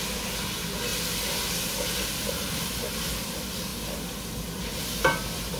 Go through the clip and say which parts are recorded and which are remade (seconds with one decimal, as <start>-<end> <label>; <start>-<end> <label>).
0.0-5.6 recorded